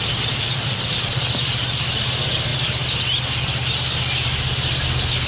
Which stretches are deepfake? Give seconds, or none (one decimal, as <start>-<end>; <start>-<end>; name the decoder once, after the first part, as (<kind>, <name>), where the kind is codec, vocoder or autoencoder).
none